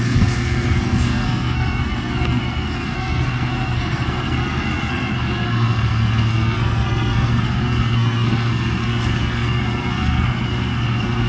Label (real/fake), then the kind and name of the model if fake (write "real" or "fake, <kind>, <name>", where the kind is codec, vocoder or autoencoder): fake, codec, SNAC